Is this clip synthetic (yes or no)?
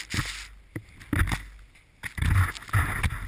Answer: no